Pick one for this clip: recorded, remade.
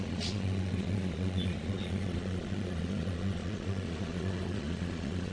remade